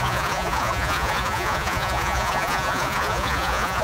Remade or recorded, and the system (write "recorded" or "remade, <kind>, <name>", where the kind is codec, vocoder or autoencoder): remade, vocoder, Vocos